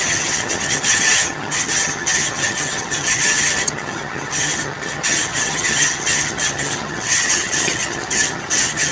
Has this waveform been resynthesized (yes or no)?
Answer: yes